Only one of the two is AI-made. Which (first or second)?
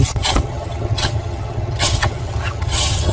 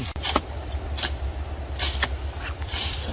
first